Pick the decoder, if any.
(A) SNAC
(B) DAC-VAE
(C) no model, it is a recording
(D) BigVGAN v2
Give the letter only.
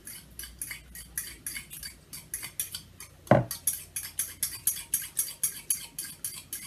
C